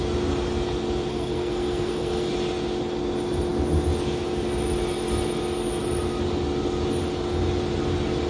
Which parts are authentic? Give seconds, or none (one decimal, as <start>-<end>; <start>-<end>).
0.0-1.1; 2.3-8.3

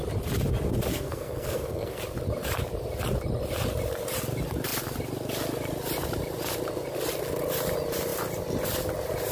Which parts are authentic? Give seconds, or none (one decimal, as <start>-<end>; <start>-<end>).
0.0-0.9; 2.0-9.3

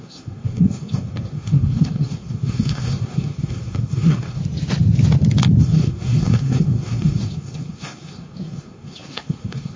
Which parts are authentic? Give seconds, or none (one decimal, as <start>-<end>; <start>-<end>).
4.4-5.6

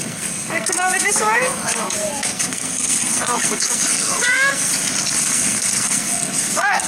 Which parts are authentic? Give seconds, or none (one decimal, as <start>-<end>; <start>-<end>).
4.7-5.2

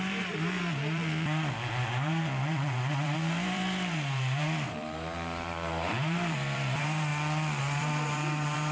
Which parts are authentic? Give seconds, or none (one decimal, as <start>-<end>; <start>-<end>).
1.0-1.9; 7.1-7.6

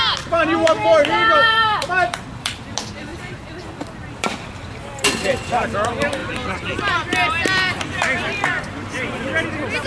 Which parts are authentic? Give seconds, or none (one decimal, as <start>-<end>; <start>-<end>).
6.2-8.2